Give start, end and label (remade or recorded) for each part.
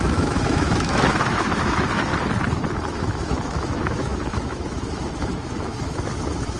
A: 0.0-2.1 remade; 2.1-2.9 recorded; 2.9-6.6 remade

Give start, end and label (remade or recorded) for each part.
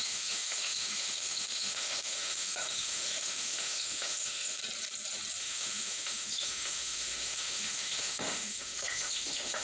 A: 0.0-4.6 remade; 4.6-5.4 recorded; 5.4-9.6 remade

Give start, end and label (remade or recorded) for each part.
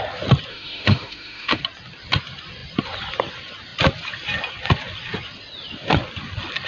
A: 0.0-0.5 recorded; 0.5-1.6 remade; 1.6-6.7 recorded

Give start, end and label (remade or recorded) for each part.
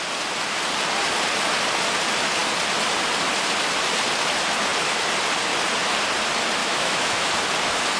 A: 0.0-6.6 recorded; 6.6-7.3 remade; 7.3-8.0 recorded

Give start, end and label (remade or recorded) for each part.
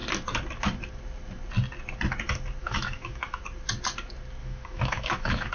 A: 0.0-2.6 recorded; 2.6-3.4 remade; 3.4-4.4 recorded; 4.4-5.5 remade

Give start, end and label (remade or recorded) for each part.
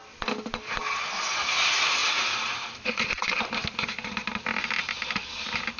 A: 0.0-5.8 recorded